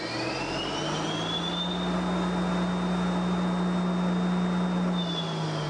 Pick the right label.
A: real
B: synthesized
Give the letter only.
A